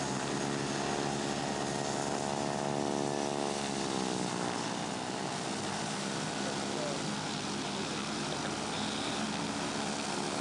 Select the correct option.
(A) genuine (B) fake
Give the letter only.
A